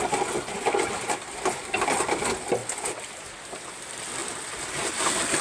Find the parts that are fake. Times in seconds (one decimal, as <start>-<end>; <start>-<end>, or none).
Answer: 1.6-2.2; 4.2-4.7